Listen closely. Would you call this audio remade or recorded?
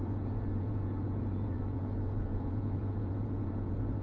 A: remade